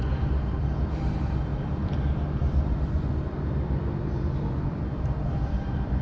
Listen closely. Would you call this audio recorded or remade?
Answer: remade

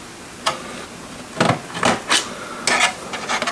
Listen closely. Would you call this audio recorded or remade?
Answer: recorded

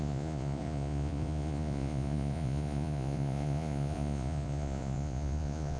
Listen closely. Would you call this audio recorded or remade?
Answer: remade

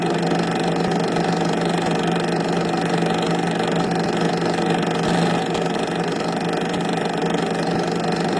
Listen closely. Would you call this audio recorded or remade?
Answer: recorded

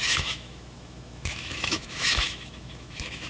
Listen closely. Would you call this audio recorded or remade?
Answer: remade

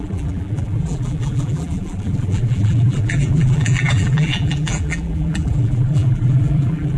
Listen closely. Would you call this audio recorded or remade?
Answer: remade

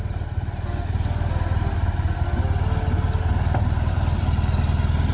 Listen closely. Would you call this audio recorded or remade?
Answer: recorded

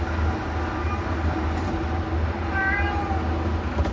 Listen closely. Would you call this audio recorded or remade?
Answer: recorded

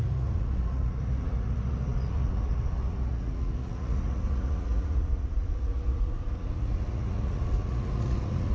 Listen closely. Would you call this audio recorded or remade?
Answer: remade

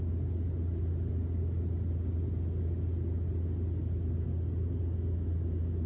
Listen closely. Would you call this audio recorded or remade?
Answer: recorded